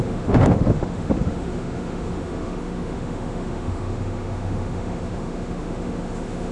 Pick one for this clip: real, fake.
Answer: fake